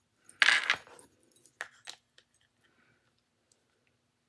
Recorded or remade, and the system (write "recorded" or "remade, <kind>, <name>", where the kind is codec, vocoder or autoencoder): recorded